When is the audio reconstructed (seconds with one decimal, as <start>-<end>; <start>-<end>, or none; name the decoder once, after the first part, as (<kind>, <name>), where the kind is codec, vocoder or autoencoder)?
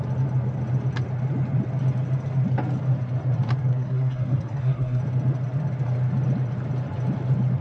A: 3.7-5.0 (codec, SNAC)